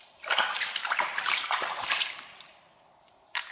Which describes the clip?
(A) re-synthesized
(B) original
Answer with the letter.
A